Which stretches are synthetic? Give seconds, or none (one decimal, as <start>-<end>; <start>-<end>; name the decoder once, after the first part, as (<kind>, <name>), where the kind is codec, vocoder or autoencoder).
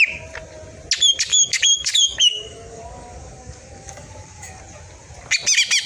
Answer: 1.3-4.6 (codec, DAC)